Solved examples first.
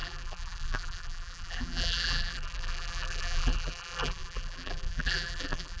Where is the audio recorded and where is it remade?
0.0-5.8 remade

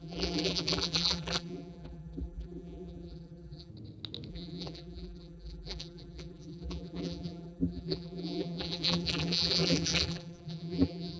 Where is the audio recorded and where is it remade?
0.0-3.7 remade; 3.7-4.3 recorded; 4.3-11.2 remade

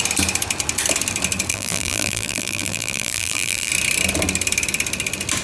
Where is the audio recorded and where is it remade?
0.0-1.5 recorded; 1.5-3.7 remade; 3.7-5.4 recorded